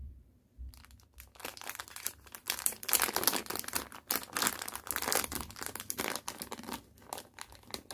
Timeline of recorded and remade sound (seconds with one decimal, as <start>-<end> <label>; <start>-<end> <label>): 0.0-0.7 remade; 0.7-1.5 recorded; 1.5-4.4 remade; 4.4-7.9 recorded